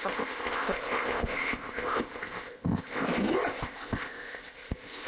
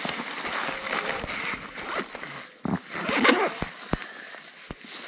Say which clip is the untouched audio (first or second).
second